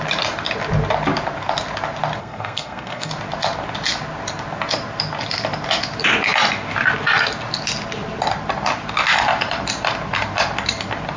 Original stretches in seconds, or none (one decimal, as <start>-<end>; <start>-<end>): 0.0-2.2; 3.1-11.2